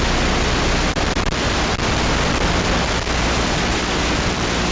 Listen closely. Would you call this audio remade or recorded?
recorded